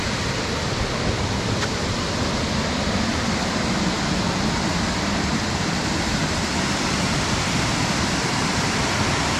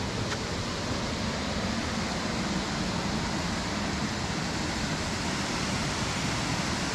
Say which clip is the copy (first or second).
first